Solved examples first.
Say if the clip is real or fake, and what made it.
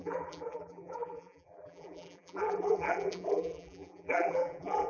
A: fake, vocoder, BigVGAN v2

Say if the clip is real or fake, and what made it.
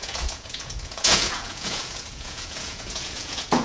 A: fake, vocoder, Vocos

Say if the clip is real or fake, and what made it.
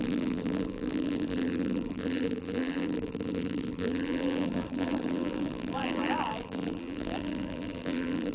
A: fake, vocoder, BigVGAN v2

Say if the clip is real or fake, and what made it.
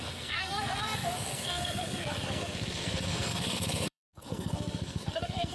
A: fake, codec, SNAC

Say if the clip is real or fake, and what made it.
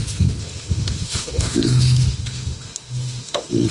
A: fake, autoencoder, DAC-VAE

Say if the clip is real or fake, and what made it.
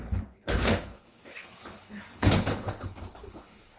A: fake, codec, HILCodec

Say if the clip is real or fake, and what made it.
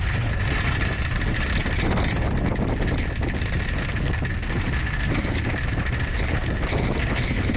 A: real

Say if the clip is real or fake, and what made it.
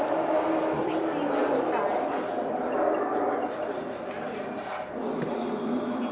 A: real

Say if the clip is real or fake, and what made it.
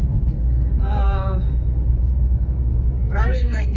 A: fake, codec, SNAC